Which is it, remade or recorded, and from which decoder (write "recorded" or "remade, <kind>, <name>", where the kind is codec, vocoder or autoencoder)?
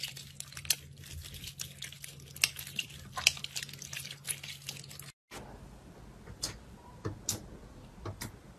recorded